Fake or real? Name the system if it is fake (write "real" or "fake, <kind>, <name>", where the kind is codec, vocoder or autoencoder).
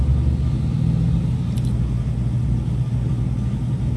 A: real